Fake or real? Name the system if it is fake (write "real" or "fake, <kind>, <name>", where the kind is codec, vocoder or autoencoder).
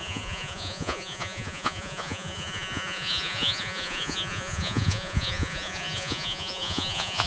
fake, vocoder, Vocos